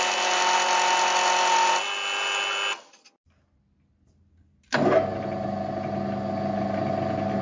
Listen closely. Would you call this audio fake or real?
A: real